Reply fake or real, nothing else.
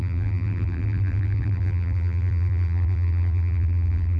fake